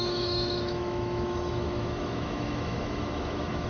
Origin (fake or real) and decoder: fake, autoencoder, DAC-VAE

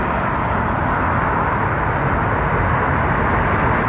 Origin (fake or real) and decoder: real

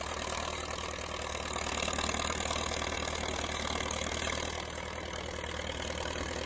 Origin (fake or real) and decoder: real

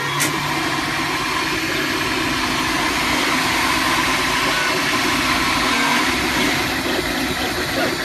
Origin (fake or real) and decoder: real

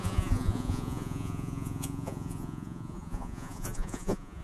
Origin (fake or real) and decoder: fake, vocoder, Vocos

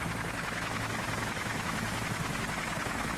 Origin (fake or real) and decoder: fake, autoencoder, DAC-VAE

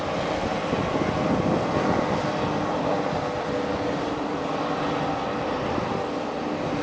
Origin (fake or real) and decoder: real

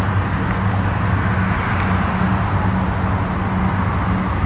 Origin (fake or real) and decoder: real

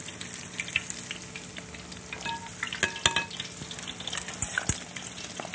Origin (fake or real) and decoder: real